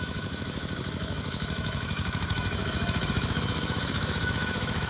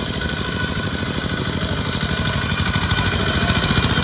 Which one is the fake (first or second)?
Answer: first